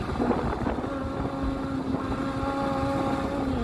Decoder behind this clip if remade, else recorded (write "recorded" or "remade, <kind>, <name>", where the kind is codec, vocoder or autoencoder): recorded